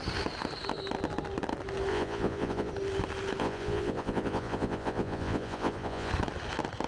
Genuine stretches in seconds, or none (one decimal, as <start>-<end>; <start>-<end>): 0.0-1.9; 2.7-3.4; 6.1-6.9